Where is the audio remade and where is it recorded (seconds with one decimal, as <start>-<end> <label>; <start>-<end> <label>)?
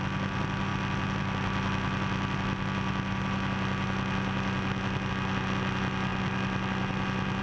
0.0-7.4 recorded